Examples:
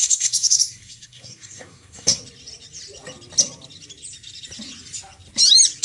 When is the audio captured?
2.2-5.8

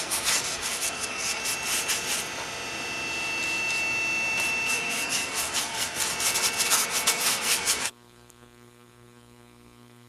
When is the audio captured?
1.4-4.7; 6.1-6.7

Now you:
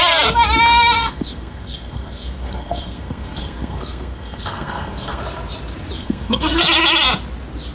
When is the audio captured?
0.0-1.0; 5.2-6.0; 6.6-7.7